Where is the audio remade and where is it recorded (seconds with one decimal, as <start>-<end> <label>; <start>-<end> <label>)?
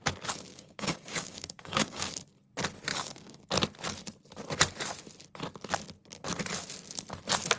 0.0-0.5 recorded; 0.5-2.1 remade; 2.1-2.9 recorded; 2.9-3.5 remade; 3.5-7.6 recorded